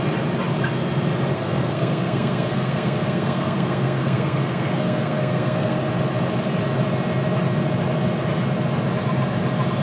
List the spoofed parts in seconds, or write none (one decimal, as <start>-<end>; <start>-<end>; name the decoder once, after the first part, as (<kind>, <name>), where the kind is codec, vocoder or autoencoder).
1.3-5.8 (codec, SNAC)